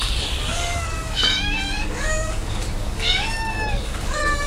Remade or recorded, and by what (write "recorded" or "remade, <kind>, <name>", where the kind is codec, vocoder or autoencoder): remade, codec, DAC